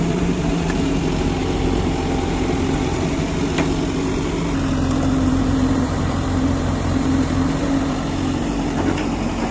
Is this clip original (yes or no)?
no